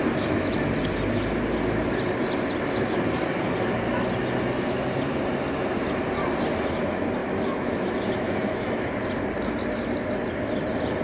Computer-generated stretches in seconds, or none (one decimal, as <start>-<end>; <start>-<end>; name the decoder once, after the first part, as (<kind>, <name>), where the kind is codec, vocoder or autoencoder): 7.2-8.9 (autoencoder, DAC-VAE)